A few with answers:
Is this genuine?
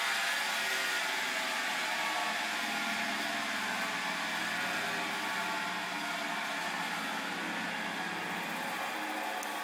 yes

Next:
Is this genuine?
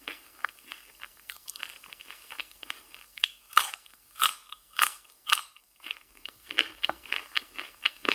no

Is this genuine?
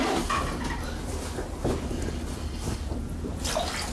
yes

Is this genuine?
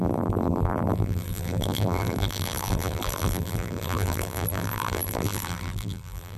no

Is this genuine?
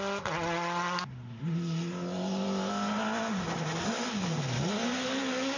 yes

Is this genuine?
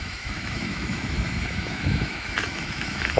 no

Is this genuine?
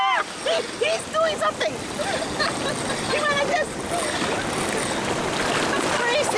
yes